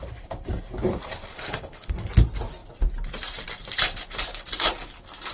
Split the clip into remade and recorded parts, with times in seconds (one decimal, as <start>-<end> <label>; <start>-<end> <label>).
0.0-1.3 recorded; 1.3-1.9 remade; 1.9-5.3 recorded